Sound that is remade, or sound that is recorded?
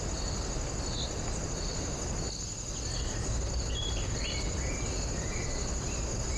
recorded